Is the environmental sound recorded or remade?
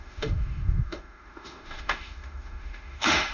remade